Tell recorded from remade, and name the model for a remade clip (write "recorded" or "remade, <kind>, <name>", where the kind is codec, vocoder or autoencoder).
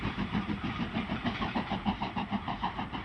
remade, vocoder, BigVGAN v2